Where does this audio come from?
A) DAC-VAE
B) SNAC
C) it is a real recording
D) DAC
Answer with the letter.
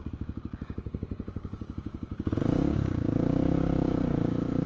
D